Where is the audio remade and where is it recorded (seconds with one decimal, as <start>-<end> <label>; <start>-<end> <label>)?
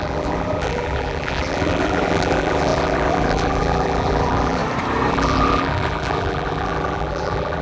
0.0-4.6 remade; 4.6-5.1 recorded; 5.1-7.6 remade